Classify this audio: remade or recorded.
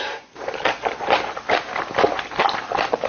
recorded